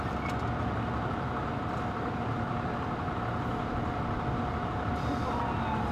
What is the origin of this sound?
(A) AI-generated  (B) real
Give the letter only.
B